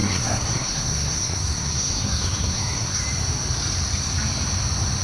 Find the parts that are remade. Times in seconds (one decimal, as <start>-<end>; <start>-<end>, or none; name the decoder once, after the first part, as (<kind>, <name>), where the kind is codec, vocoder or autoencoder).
0.0-3.0 (codec, SNAC)